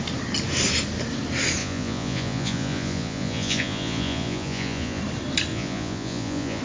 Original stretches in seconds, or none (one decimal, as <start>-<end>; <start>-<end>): 0.0-1.6; 5.0-5.5